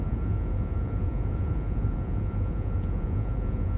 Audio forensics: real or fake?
fake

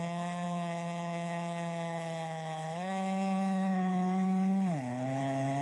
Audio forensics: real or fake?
fake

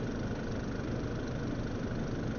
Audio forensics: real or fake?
real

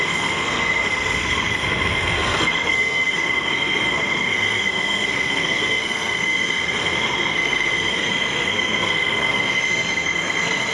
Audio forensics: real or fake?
fake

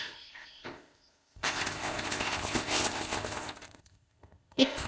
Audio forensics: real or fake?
fake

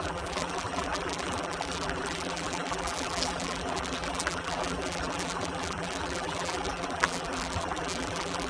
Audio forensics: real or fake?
fake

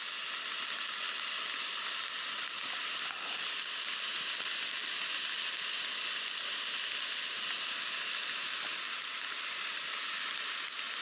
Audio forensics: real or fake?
real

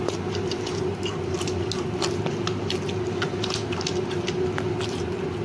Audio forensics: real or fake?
real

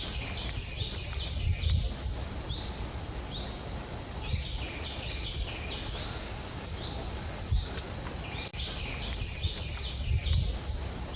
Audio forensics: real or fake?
real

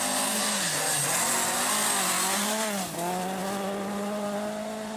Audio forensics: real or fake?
real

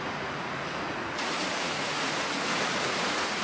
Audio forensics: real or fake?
fake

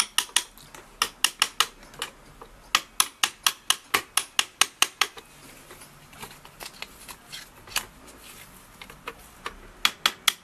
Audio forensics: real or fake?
real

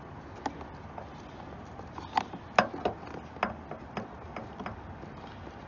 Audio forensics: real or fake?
real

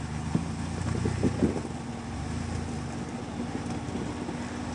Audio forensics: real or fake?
real